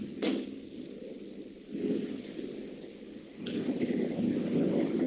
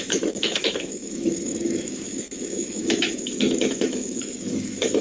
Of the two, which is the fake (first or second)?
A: second